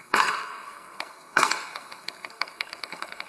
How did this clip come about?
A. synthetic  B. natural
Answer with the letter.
A